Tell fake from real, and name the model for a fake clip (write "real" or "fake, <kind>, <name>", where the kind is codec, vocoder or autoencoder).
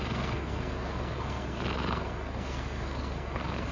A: fake, codec, SNAC